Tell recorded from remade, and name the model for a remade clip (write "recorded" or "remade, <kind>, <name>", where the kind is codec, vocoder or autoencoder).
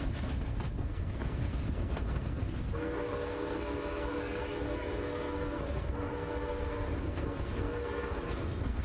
remade, codec, SNAC